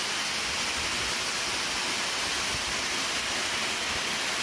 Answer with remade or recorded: recorded